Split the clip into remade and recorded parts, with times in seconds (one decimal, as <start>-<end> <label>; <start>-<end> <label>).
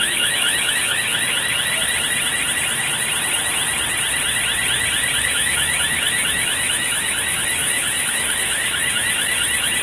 0.0-1.1 remade; 1.1-5.2 recorded; 5.2-9.8 remade